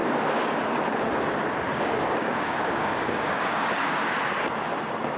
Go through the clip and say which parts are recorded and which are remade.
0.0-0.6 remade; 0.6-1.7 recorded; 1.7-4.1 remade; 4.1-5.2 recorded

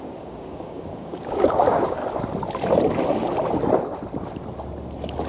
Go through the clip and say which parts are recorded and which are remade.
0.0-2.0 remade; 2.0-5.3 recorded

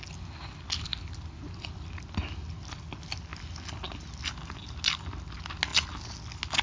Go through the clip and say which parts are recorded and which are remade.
0.0-6.6 recorded

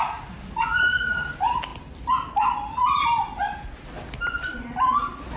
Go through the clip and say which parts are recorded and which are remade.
0.0-5.4 recorded

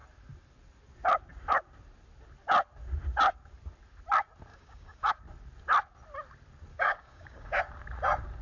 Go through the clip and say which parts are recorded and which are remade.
0.0-4.5 recorded; 4.5-5.1 remade; 5.1-6.7 recorded; 6.7-7.6 remade; 7.6-8.4 recorded

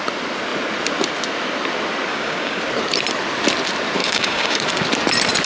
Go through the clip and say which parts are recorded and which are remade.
0.0-2.1 recorded; 2.1-2.6 remade; 2.6-4.0 recorded; 4.0-4.6 remade; 4.6-5.5 recorded